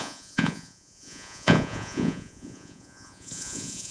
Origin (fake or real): fake